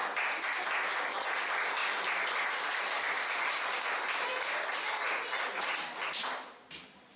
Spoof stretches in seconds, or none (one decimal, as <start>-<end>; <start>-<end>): none